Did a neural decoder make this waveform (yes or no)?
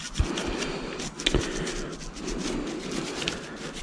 no